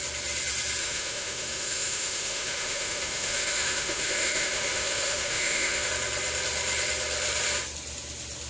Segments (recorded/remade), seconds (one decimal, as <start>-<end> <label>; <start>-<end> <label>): 0.0-0.8 recorded; 0.8-5.9 remade; 5.9-8.5 recorded